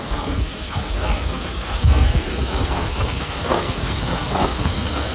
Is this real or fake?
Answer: fake